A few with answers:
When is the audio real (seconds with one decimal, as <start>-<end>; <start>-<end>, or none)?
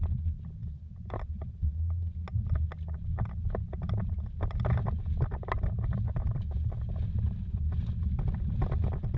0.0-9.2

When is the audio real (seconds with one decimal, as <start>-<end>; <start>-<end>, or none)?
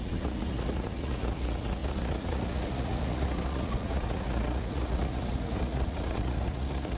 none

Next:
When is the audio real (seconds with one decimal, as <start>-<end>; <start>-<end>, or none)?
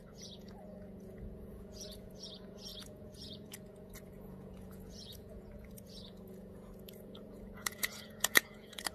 none